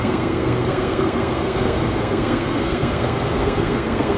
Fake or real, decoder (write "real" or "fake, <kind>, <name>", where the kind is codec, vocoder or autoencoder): fake, codec, SNAC